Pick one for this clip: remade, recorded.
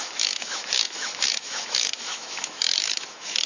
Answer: remade